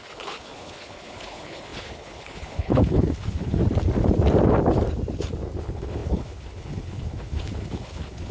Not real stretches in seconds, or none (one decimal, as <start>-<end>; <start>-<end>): 0.0-3.6; 5.6-8.3